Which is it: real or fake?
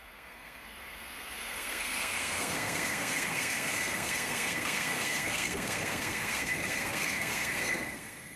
fake